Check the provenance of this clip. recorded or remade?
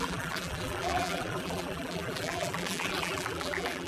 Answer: remade